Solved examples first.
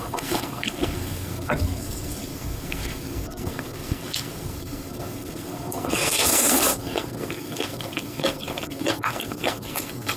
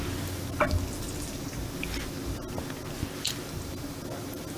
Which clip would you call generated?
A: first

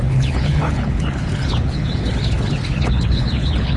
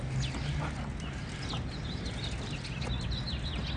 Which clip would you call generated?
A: first